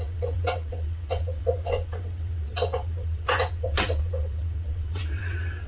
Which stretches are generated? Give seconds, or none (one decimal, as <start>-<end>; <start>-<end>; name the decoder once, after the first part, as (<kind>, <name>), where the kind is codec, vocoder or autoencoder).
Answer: 0.0-5.7 (vocoder, WaveNeXt)